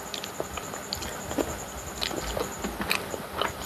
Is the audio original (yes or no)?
yes